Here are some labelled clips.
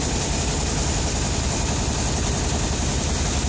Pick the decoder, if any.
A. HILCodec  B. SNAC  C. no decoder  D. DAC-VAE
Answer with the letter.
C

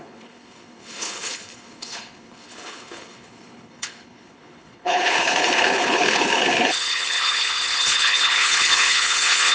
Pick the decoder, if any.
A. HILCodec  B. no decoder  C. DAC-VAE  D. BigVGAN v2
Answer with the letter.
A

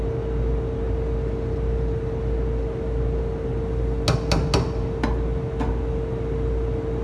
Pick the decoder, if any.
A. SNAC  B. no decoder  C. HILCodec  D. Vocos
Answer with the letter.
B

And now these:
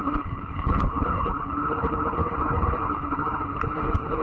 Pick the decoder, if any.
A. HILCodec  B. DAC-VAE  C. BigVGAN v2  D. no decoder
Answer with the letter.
A